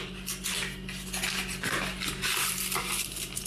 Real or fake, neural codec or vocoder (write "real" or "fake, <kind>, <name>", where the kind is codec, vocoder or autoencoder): real